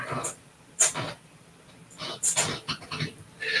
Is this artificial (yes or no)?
no